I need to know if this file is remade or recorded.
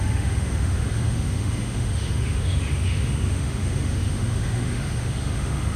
remade